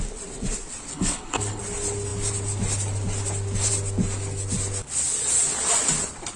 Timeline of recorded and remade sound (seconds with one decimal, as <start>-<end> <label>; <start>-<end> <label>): 0.0-0.9 recorded; 0.9-1.6 remade; 1.6-6.4 recorded